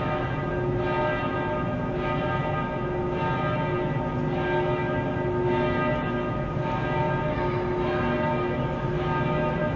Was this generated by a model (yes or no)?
no